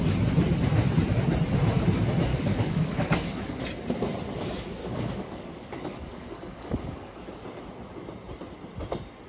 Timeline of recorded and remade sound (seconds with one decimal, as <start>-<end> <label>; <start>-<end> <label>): 0.0-2.3 recorded; 2.3-3.6 remade; 3.6-4.8 recorded; 4.8-7.4 remade; 7.4-9.3 recorded